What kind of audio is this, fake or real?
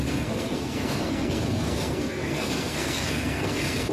fake